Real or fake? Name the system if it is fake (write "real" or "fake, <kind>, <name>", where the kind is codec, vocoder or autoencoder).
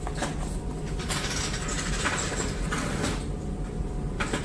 real